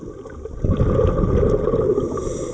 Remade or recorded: recorded